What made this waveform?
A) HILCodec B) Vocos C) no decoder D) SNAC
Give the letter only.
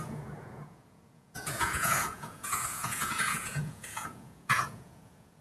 B